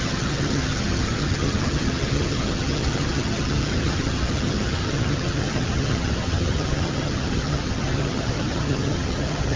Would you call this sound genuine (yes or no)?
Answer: no